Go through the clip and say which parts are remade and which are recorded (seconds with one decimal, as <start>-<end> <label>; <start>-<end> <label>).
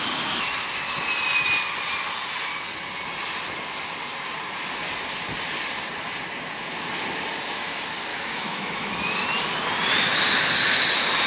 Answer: 0.0-8.1 recorded; 8.1-8.9 remade; 8.9-11.3 recorded